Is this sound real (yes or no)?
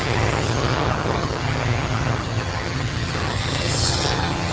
no